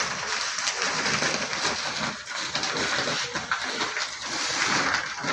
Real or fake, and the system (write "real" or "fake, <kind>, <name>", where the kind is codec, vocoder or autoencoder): real